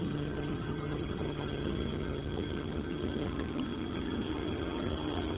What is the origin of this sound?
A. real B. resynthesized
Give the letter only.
B